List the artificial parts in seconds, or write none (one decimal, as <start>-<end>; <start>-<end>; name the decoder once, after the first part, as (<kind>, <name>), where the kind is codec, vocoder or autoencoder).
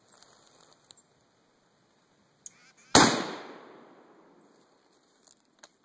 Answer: none